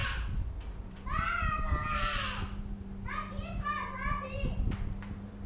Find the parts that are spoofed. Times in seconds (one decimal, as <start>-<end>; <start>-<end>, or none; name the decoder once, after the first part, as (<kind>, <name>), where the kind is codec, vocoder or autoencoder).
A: none